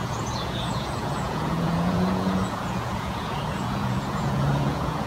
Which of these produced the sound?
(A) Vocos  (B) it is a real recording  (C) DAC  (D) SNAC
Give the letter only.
A